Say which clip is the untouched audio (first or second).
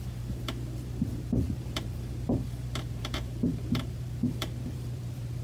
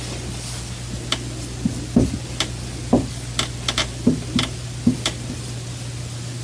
second